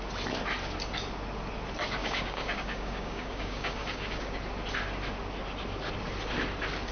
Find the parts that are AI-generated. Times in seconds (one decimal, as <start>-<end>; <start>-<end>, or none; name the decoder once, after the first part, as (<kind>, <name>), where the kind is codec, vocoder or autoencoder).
2.0-4.4 (codec, DAC)